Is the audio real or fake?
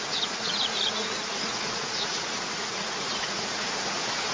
fake